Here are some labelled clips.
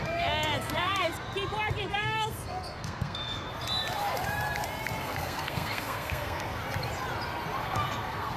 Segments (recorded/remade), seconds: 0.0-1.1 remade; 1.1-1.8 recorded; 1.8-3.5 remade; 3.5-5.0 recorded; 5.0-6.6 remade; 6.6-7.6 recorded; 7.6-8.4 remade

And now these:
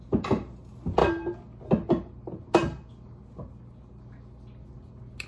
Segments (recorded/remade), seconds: 0.0-5.3 recorded

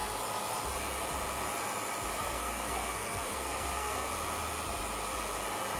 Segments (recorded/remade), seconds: 0.0-2.1 recorded; 2.1-4.1 remade; 4.1-5.8 recorded

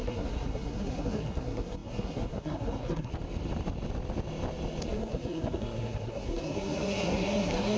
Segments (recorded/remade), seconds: 0.0-3.1 remade; 3.1-4.8 recorded; 4.8-7.8 remade